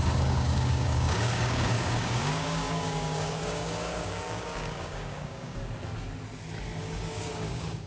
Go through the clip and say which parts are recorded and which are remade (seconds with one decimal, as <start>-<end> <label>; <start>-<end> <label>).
0.0-5.6 remade; 5.6-6.8 recorded; 6.8-7.9 remade